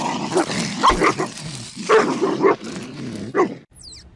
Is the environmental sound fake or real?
real